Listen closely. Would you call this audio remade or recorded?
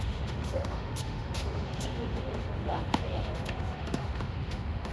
remade